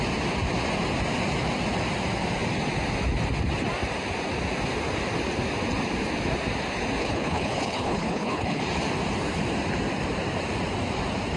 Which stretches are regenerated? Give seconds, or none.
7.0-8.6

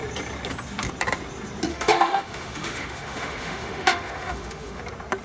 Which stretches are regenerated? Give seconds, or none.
1.7-4.8

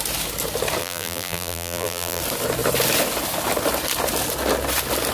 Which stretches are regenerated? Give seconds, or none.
0.8-2.2

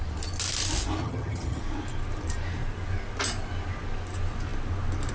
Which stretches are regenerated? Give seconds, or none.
1.0-1.6

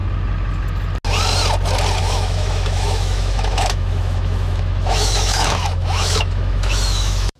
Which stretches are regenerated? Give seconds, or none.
2.0-7.4